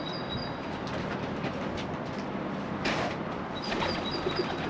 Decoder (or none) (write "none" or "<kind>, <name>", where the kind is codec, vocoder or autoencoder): none